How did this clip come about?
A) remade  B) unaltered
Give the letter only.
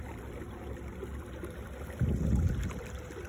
B